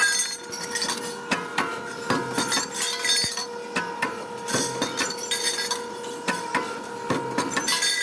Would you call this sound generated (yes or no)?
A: no